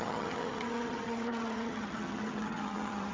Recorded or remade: remade